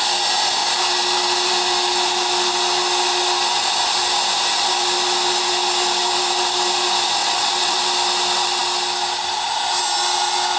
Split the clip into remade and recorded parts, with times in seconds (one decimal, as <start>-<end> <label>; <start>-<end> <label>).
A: 0.0-7.2 recorded; 7.2-7.8 remade; 7.8-10.6 recorded